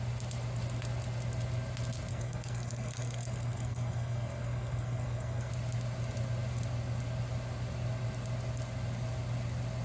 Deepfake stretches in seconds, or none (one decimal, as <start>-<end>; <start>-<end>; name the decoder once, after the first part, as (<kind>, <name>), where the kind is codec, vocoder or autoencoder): 2.1-5.5 (codec, SNAC)